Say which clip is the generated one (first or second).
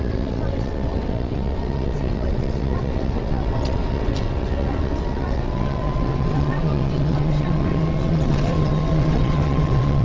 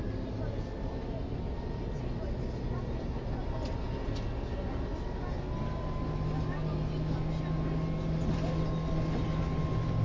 first